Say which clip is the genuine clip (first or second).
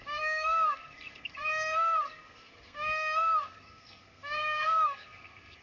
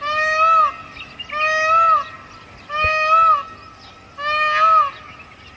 second